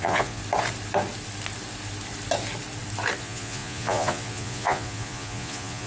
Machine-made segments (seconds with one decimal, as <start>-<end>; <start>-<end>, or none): 0.0-0.4; 3.2-5.9